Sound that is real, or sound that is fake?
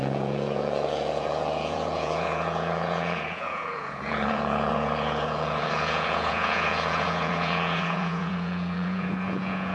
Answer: fake